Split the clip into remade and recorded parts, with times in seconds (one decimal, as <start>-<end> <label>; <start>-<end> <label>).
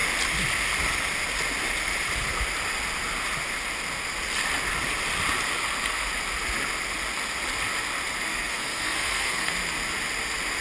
0.0-8.3 recorded; 8.3-9.5 remade; 9.5-10.6 recorded